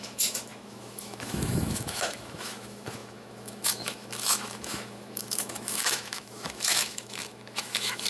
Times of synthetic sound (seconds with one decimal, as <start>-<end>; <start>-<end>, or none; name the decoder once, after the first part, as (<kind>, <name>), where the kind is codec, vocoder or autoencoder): 0.0-8.1 (autoencoder, DAC-VAE)